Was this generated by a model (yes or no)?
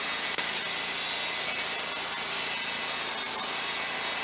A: no